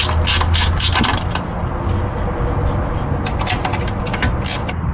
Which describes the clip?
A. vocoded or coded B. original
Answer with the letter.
B